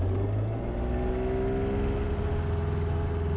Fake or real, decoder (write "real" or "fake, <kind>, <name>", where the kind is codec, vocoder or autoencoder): real